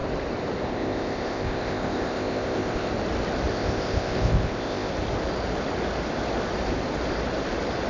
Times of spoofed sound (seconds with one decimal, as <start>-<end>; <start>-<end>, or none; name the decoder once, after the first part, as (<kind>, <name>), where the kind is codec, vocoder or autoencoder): 0.6-2.9 (codec, ZipCodec); 3.5-4.9